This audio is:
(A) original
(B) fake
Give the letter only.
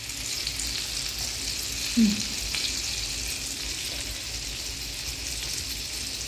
A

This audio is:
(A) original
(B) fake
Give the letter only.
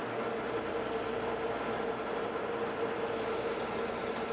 A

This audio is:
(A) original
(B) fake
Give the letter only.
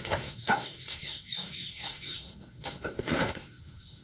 B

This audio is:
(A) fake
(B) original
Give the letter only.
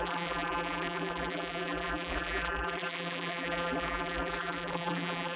A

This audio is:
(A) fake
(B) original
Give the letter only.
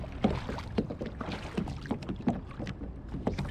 B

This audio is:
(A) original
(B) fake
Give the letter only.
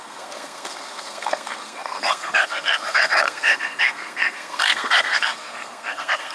B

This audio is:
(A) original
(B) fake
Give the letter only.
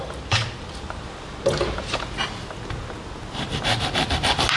A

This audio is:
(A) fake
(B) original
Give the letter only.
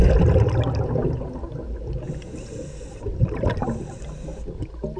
B